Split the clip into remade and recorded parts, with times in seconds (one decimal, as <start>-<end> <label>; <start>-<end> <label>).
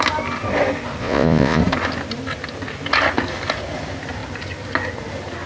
0.0-1.0 recorded; 1.0-1.6 remade; 1.6-5.5 recorded